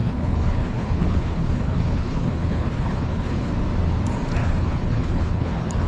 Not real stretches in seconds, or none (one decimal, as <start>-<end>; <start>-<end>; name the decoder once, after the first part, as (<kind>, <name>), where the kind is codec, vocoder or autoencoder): 0.0-3.5 (codec, HILCodec); 4.4-5.9